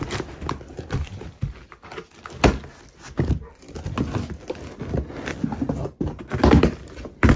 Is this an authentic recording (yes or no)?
yes